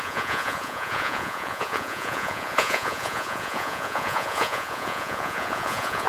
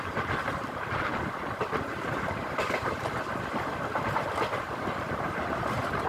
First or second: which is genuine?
second